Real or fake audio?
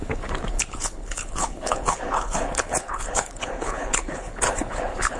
fake